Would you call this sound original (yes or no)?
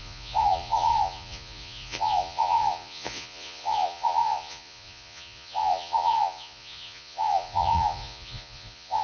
no